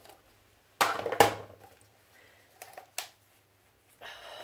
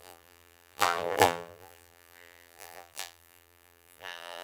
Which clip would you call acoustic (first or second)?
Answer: first